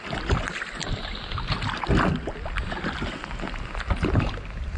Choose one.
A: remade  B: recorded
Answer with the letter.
B